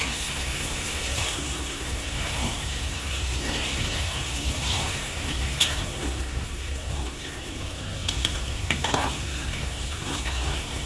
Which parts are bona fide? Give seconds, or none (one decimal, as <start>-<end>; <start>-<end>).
none